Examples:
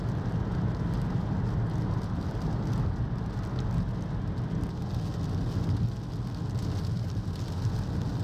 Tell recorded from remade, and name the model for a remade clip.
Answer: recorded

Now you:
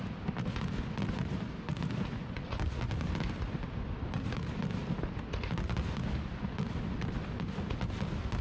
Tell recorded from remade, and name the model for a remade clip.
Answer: recorded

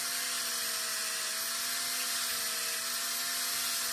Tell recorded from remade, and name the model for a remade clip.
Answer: recorded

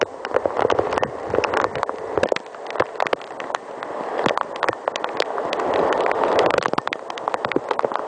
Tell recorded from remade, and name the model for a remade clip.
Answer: recorded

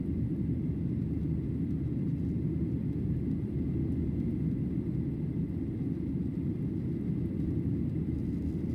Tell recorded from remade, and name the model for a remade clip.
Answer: remade, vocoder, BigVGAN v2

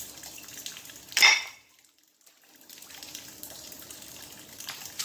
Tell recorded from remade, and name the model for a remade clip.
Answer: remade, vocoder, BigVGAN v2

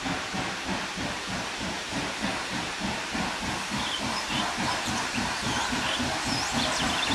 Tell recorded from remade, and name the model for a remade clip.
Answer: remade, vocoder, BigVGAN v2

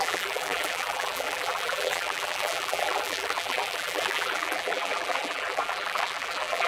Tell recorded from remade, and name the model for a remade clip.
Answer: remade, vocoder, BigVGAN v2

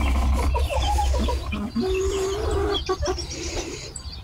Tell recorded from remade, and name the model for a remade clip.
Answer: recorded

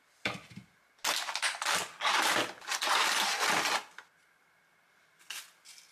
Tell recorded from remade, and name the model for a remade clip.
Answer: recorded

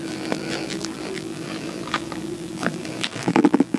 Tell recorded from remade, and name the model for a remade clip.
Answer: remade, vocoder, BigVGAN v2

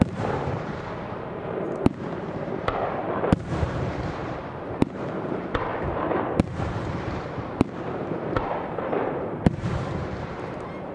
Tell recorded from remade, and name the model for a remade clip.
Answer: remade, vocoder, BigVGAN v2